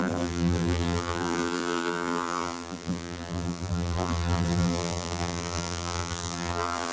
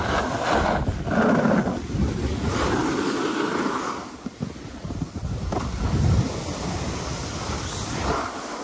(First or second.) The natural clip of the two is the second